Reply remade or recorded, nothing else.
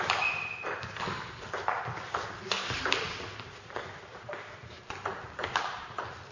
recorded